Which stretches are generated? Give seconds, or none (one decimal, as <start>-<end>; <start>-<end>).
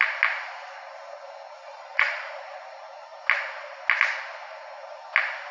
1.6-2.3